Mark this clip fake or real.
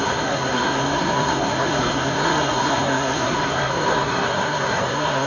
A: fake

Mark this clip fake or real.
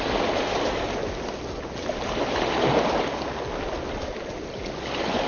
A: real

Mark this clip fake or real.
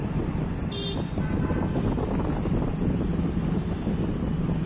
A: real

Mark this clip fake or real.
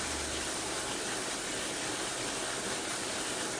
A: real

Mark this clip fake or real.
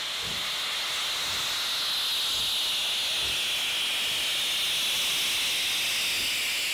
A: real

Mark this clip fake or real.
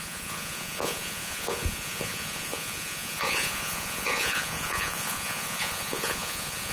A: fake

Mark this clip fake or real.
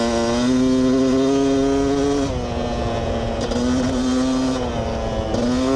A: real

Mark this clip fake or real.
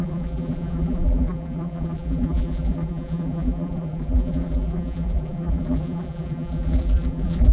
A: fake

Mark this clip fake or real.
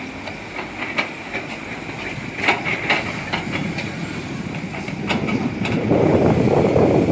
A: real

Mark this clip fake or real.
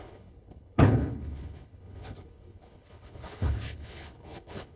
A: fake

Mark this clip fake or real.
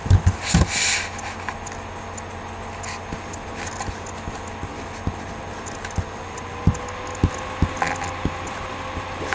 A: real